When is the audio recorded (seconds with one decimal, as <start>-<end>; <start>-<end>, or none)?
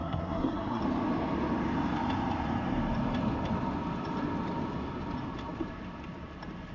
0.8-6.7